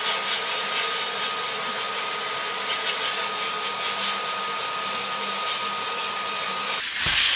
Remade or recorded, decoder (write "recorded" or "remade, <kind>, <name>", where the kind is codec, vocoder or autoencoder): recorded